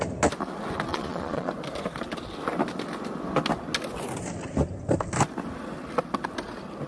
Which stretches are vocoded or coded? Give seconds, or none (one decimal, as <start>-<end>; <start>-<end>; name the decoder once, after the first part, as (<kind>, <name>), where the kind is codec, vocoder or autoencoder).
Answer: 0.9-1.5 (vocoder, Vocos)